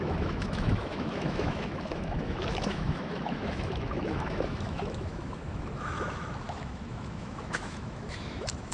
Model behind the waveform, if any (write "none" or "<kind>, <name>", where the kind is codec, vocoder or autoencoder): autoencoder, DAC-VAE